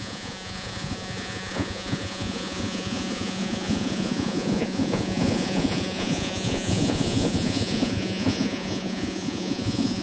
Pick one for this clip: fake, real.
fake